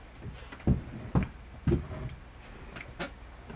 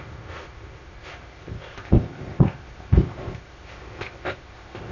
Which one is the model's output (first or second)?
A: second